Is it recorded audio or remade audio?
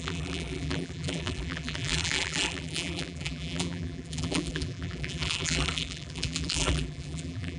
remade